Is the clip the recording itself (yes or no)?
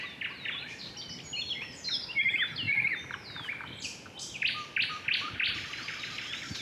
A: yes